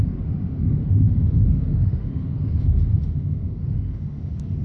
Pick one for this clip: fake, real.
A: fake